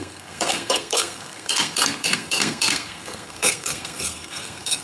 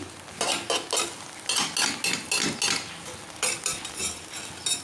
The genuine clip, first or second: second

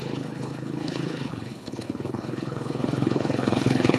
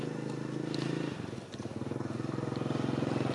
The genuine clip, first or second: second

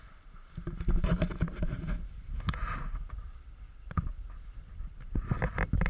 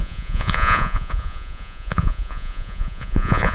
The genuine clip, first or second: first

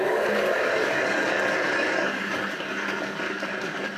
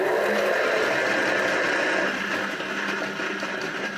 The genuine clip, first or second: second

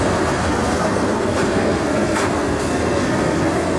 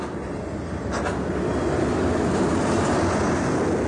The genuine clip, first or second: second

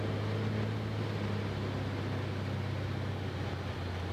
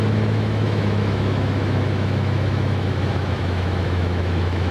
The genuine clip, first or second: first